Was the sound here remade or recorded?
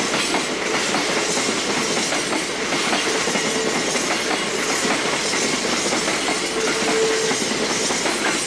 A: recorded